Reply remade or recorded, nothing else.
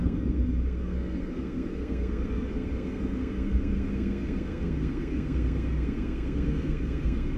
remade